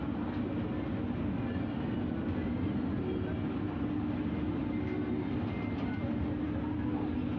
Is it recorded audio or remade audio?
recorded